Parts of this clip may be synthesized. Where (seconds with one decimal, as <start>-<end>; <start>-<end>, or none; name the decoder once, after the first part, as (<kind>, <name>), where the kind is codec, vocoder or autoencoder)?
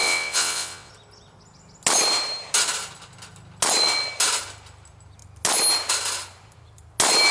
0.0-0.9 (vocoder, WaveNeXt)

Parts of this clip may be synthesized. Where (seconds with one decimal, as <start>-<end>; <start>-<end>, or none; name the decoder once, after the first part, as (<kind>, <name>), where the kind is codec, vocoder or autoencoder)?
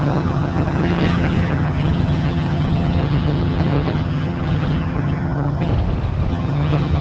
0.0-5.7 (vocoder, HiFi-GAN); 6.3-7.0